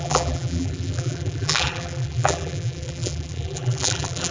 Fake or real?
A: fake